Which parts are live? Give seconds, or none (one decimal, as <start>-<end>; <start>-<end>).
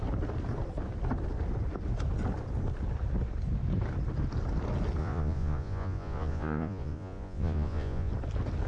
0.0-5.0; 8.1-8.7